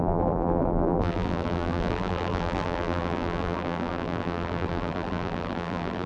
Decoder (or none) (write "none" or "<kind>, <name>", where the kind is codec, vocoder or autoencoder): vocoder, BigVGAN v2